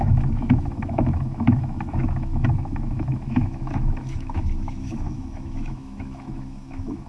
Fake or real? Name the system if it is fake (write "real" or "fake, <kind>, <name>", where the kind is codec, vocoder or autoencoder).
fake, autoencoder, DAC-VAE